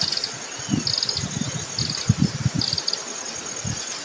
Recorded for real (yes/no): yes